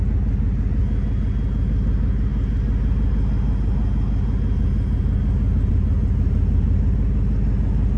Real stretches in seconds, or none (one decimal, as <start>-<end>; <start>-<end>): 0.0-8.0

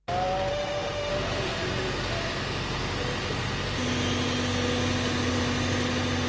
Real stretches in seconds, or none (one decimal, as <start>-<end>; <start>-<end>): 0.0-0.5; 1.1-6.3